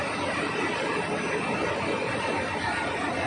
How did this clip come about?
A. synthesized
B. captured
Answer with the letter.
B